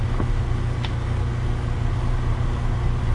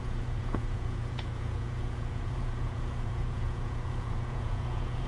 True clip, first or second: first